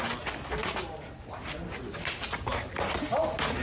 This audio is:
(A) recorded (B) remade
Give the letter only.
A